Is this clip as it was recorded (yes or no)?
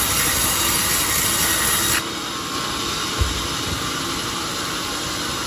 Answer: yes